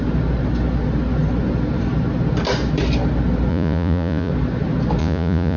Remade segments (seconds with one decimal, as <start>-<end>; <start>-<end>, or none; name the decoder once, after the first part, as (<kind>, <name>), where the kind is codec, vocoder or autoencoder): 3.5-4.3 (vocoder, Vocos); 5.0-5.6